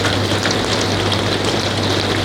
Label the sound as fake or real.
real